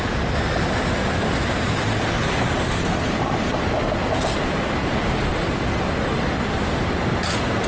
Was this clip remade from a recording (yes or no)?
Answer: no